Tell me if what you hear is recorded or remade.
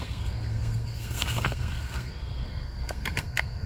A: remade